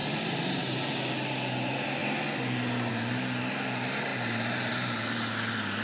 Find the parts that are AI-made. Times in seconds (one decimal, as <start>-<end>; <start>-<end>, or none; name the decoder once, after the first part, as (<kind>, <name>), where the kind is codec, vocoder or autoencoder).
none